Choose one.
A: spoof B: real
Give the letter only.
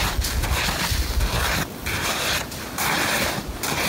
B